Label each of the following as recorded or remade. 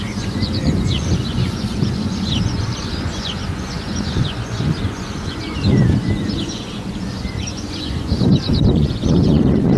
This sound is remade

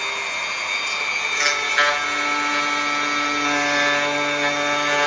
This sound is recorded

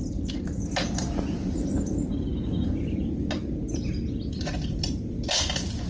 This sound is recorded